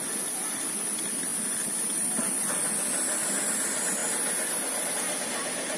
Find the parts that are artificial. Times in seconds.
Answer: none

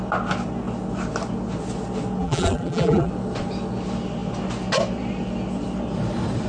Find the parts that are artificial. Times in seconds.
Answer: 2.2-3.1 (vocoder, BigVGAN v2)

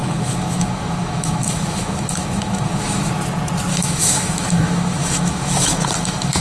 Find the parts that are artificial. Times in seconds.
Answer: 0.0-3.1 (autoencoder, DAC-VAE); 3.7-6.4

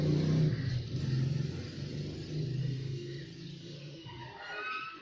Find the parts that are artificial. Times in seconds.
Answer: 2.6-3.2 (autoencoder, DAC-VAE); 3.6-4.2

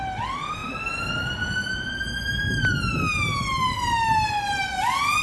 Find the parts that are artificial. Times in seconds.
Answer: none

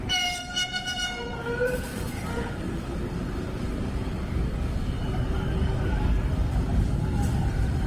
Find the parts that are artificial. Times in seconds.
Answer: 0.0-7.9 (codec, DAC)

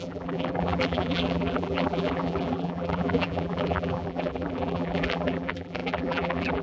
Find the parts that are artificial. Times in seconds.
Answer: 0.0-6.6 (vocoder, BigVGAN v2)